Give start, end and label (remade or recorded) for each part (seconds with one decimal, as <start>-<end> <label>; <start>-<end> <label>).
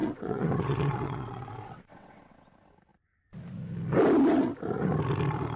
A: 0.0-2.5 remade; 2.5-5.6 recorded